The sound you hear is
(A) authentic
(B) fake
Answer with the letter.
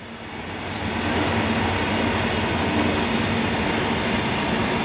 A